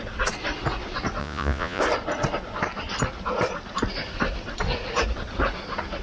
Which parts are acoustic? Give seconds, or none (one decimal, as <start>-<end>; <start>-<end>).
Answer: 0.0-1.2; 1.8-6.0